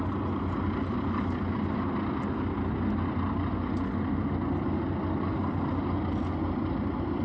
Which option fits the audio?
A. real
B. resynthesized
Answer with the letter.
A